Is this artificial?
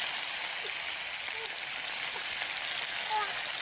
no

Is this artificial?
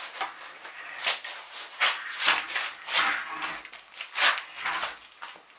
no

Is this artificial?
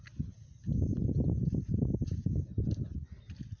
no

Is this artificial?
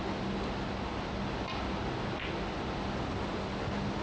no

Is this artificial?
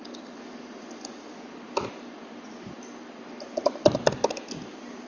no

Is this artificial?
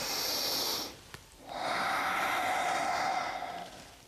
no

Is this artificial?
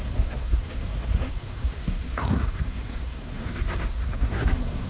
yes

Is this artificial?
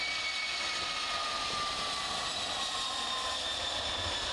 no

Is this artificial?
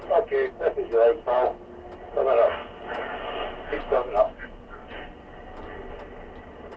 no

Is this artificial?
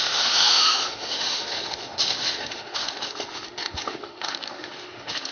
yes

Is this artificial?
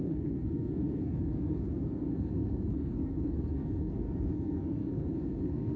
yes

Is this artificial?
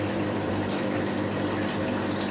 no